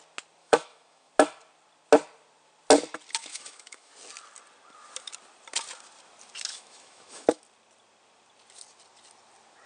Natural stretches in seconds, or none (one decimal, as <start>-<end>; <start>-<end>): 0.0-0.4; 1.1-3.2; 3.9-6.5; 7.4-9.7